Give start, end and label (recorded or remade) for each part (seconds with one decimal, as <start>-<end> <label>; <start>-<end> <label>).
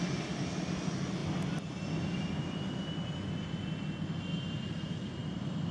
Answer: 0.0-5.7 recorded